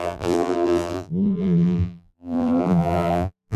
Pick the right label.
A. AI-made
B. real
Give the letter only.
A